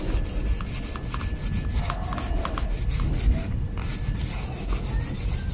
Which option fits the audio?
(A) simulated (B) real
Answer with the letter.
B